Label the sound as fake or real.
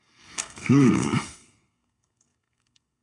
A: fake